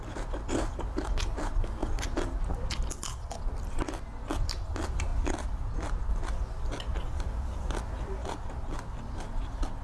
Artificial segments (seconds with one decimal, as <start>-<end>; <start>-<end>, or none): 6.9-7.7